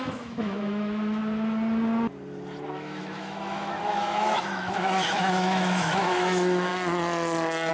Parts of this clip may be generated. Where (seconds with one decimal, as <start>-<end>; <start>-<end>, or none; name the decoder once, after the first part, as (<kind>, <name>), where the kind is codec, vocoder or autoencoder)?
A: 0.0-1.2 (autoencoder, DAC-VAE); 2.7-6.7